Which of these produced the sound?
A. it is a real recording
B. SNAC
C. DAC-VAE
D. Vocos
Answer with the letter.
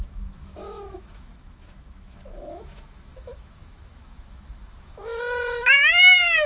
C